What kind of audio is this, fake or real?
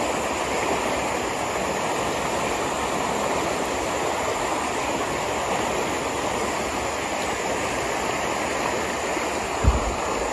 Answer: real